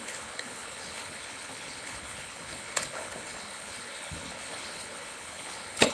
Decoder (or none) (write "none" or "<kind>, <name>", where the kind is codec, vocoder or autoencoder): codec, HILCodec